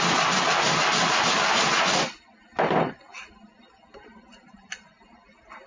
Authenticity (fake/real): real